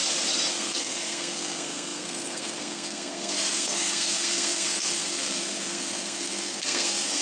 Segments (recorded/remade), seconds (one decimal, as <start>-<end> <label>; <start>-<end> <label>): 0.0-0.5 recorded; 0.5-7.2 remade